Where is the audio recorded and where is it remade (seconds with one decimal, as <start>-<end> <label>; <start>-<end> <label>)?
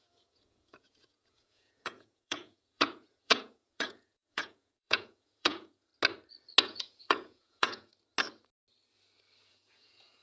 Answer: 0.0-5.9 remade; 5.9-6.6 recorded; 6.6-7.9 remade; 7.9-9.5 recorded; 9.5-10.2 remade